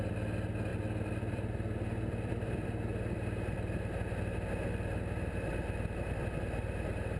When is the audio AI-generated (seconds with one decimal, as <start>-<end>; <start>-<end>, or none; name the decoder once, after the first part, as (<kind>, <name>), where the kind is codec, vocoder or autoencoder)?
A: 0.7-2.3 (vocoder, BigVGAN v2)